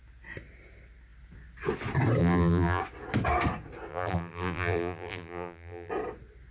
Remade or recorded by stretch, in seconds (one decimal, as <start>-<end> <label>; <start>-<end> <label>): 0.0-2.2 recorded; 2.2-2.8 remade; 2.8-3.9 recorded; 3.9-5.9 remade; 5.9-6.5 recorded